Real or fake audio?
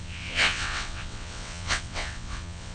fake